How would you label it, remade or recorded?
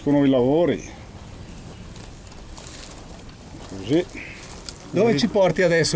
recorded